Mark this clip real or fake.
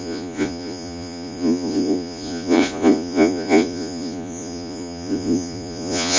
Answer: fake